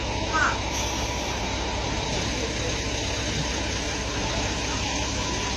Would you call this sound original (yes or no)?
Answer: yes